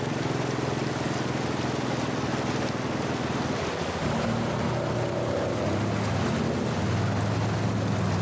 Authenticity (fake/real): real